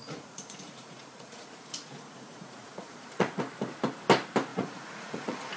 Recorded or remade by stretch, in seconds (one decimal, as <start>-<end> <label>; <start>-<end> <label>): 0.0-3.4 remade; 3.4-4.5 recorded; 4.5-5.6 remade